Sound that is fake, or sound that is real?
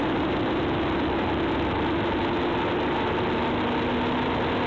real